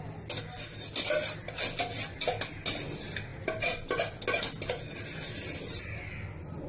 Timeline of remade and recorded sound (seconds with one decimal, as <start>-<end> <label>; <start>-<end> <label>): 0.0-6.7 recorded